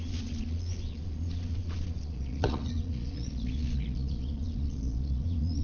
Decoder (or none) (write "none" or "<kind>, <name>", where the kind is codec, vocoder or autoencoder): vocoder, Vocos